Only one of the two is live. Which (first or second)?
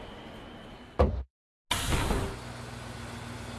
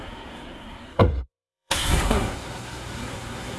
first